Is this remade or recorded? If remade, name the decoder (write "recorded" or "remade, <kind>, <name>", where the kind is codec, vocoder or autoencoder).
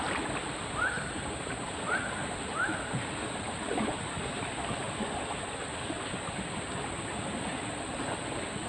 recorded